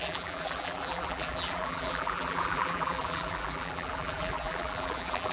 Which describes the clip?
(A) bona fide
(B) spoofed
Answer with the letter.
B